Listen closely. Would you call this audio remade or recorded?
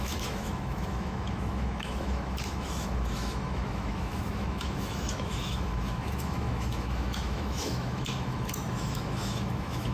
remade